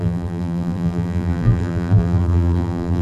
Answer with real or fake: fake